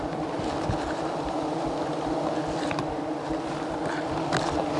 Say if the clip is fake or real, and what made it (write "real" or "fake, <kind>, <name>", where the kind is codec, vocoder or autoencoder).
real